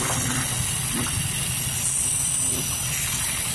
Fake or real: real